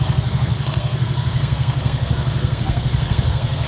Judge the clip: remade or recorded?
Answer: remade